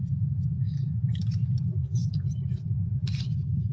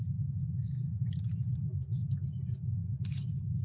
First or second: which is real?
second